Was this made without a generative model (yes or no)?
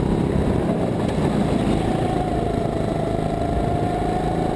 yes